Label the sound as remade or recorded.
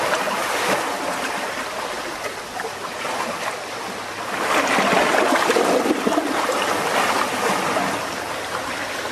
recorded